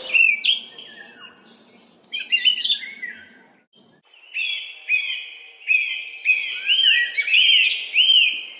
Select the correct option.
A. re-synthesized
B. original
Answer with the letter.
B